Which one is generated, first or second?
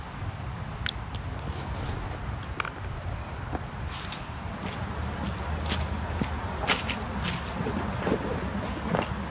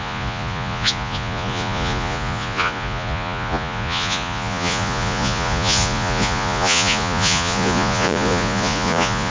second